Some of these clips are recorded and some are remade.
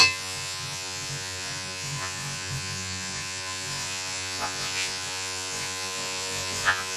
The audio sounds remade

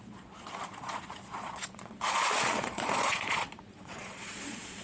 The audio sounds remade